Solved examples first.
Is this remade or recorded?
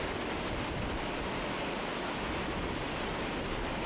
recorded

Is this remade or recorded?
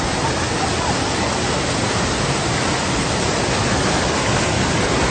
recorded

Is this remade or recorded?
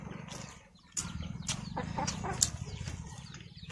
recorded